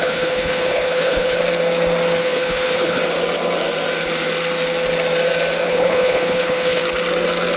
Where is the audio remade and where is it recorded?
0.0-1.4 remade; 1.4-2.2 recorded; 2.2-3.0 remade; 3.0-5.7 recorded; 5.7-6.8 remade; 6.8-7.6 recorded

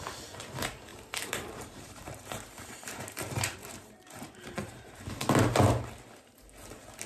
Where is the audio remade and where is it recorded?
0.0-0.9 recorded; 0.9-5.2 remade; 5.2-7.1 recorded

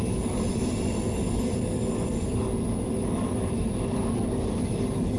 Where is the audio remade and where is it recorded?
0.0-5.2 recorded

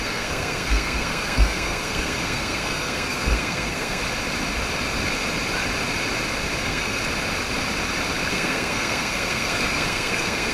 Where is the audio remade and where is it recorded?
0.0-4.0 remade; 4.0-6.6 recorded; 6.6-7.0 remade; 7.0-8.3 recorded; 8.3-10.5 remade

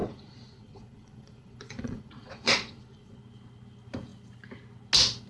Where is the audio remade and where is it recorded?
0.0-3.2 remade; 3.2-5.3 recorded

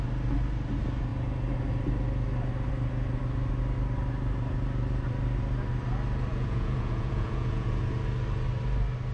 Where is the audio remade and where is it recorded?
0.0-6.3 recorded; 6.3-7.8 remade; 7.8-9.1 recorded